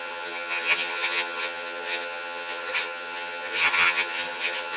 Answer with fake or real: fake